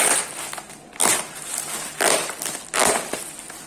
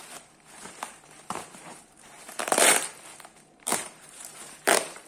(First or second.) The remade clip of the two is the second